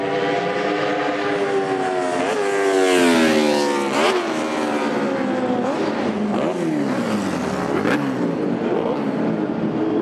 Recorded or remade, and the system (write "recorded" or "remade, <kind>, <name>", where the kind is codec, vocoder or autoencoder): recorded